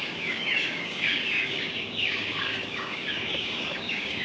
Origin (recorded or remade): remade